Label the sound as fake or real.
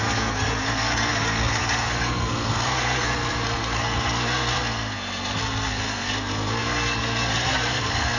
fake